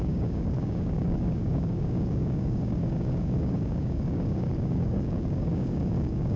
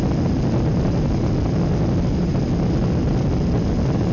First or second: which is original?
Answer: second